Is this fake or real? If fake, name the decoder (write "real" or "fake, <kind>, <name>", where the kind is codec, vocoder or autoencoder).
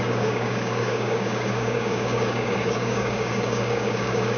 fake, codec, DAC